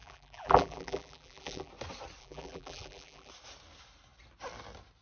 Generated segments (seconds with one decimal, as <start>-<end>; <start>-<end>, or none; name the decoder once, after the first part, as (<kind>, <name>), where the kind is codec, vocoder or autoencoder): 0.0-1.7 (vocoder, BigVGAN v2); 2.2-3.3